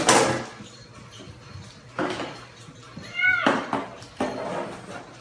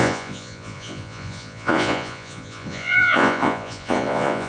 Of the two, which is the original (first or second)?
first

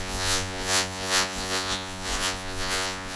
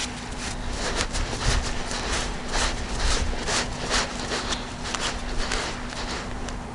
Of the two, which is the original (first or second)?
second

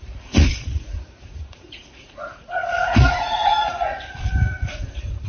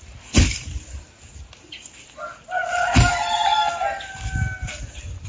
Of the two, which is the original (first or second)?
second